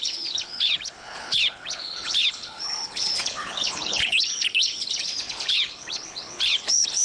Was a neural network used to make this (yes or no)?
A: yes